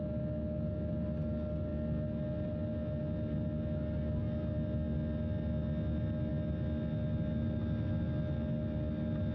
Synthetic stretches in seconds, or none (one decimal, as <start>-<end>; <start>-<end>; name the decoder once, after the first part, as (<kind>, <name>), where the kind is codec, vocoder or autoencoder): none